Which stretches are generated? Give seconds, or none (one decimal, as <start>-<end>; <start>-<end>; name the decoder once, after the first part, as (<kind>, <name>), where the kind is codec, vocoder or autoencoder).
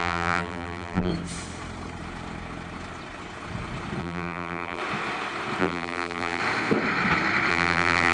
0.0-1.1 (vocoder, BigVGAN v2); 4.0-4.8; 5.6-6.4; 7.5-8.1